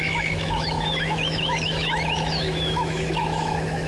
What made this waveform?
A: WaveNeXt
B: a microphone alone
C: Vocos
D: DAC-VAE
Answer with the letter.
D